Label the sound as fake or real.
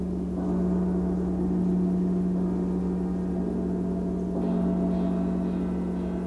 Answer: real